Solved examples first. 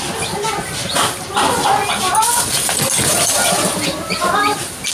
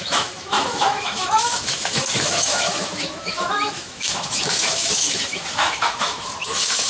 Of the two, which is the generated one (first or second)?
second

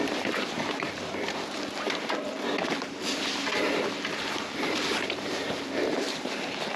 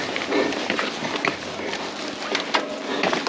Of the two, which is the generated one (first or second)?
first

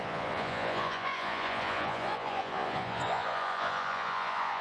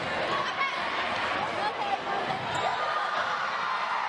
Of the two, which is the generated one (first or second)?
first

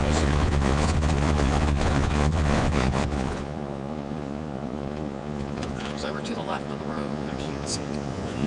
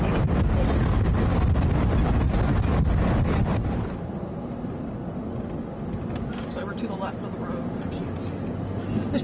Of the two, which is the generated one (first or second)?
first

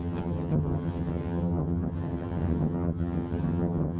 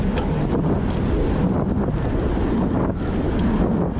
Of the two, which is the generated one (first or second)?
first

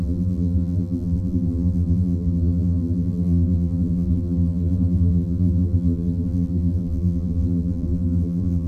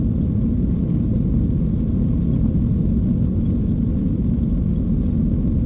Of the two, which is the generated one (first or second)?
first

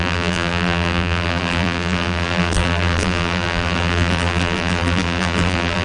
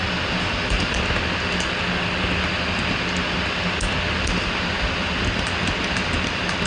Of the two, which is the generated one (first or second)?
first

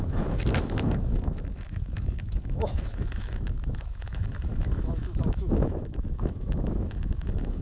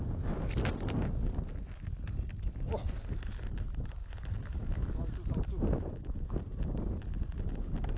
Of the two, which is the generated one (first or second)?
first